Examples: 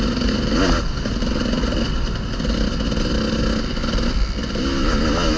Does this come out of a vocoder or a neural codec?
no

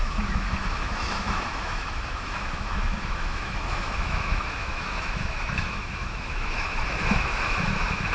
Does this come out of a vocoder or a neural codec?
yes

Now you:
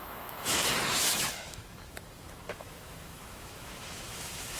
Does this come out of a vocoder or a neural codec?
yes